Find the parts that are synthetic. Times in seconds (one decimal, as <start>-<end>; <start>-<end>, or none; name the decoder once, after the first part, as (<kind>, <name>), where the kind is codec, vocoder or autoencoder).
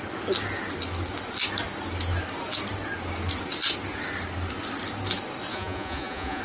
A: 5.5-6.4 (vocoder, Vocos)